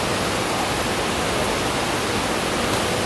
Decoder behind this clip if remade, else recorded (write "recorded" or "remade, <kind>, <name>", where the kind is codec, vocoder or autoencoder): recorded